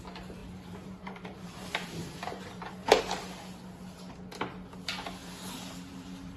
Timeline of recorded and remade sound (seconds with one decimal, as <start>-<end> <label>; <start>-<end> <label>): 0.0-0.4 recorded; 0.4-3.0 remade; 3.0-5.2 recorded; 5.2-6.4 remade